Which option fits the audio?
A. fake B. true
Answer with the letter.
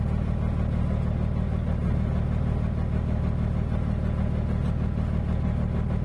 B